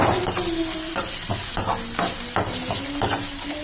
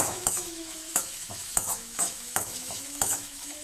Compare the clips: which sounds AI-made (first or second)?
second